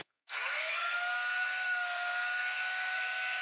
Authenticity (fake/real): fake